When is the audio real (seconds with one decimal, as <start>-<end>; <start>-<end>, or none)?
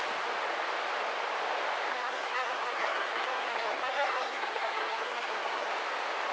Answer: 0.0-1.9; 5.7-6.3